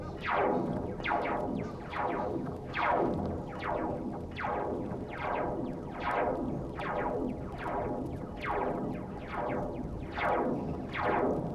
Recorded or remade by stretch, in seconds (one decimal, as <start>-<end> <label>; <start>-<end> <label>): 0.0-1.9 recorded; 1.9-3.1 remade; 3.1-11.5 recorded